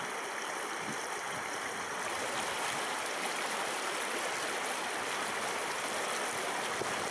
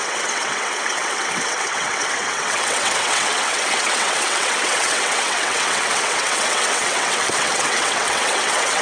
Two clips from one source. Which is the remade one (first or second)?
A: second